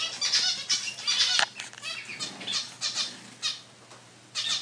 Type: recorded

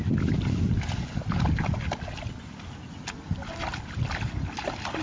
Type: recorded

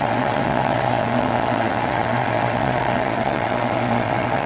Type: remade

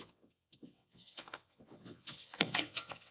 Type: remade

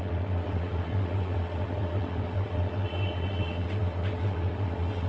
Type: remade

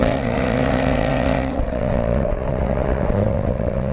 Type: remade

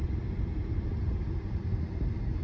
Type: recorded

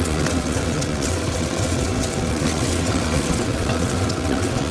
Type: remade